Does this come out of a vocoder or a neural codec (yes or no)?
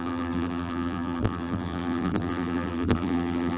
yes